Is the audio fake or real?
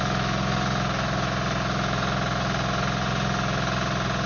real